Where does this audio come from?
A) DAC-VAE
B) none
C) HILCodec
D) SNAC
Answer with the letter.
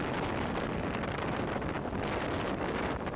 B